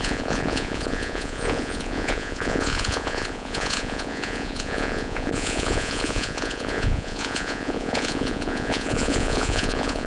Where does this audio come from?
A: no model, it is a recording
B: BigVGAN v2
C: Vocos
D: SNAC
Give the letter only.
C